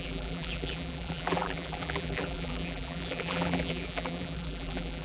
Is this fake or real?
fake